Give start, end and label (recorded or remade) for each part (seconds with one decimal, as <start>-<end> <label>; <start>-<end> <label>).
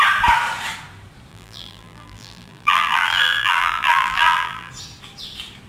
0.0-1.3 recorded; 1.3-4.7 remade; 4.7-5.7 recorded